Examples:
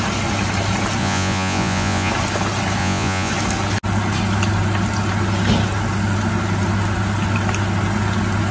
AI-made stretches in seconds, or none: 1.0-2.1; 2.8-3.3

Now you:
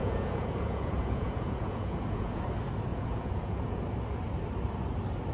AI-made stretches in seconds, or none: 0.0-2.4; 2.9-3.8

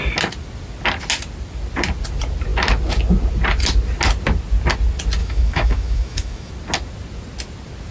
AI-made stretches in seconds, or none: 5.2-6.5

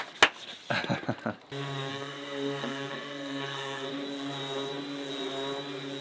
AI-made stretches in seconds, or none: 1.9-3.9

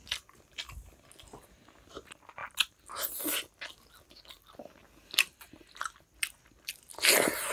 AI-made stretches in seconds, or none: none

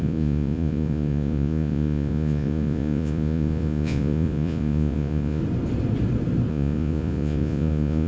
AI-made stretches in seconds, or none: 0.0-5.4; 6.5-8.1

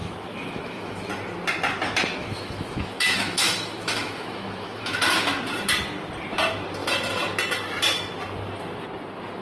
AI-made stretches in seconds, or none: 0.0-1.1; 2.2-5.0